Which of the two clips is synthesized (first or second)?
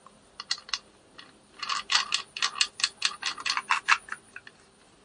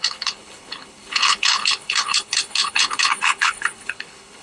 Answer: second